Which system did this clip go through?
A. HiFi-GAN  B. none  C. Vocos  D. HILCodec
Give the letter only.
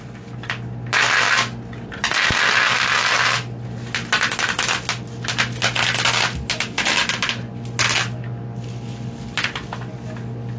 B